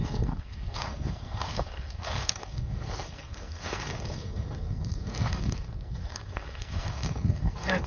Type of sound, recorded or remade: remade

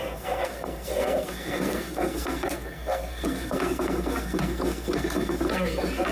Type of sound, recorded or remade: remade